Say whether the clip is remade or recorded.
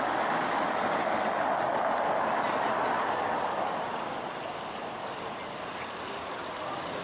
recorded